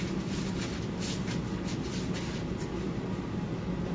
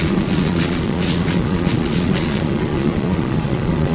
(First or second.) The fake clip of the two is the second